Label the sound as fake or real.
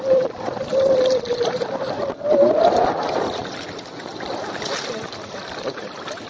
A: real